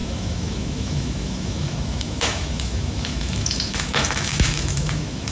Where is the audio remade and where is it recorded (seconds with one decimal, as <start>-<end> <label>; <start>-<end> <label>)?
0.0-5.3 remade